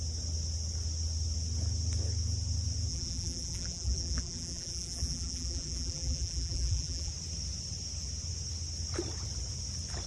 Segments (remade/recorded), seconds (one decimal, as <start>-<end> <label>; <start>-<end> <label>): 0.0-2.9 recorded; 2.9-7.1 remade; 7.1-10.1 recorded